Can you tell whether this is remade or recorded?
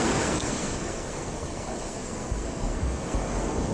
remade